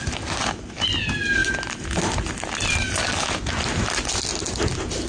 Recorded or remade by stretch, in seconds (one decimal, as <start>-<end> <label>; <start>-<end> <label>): 0.0-5.1 recorded